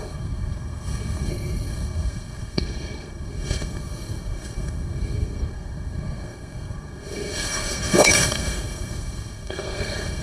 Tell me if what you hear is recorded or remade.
remade